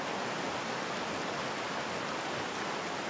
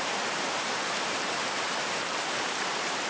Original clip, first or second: first